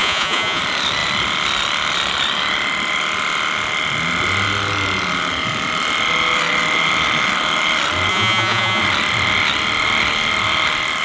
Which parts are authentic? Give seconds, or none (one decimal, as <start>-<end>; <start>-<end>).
0.6-8.1; 8.8-11.0